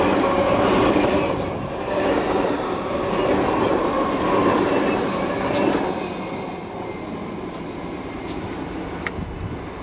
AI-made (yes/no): no